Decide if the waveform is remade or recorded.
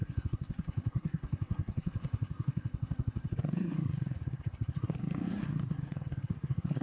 remade